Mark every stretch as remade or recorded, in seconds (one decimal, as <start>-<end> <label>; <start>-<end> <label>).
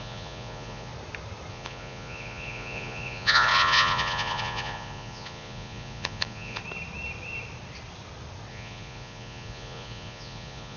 0.0-0.9 remade; 0.9-1.5 recorded; 1.5-6.6 remade; 6.6-8.5 recorded; 8.5-10.8 remade